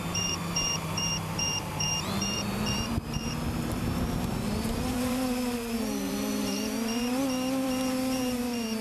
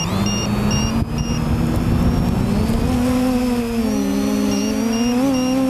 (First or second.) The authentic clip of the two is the second